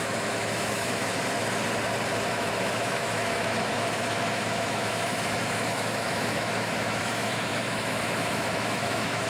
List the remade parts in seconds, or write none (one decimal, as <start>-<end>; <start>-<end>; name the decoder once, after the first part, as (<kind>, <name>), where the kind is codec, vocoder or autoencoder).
0.0-1.1 (autoencoder, DAC-VAE); 2.3-9.3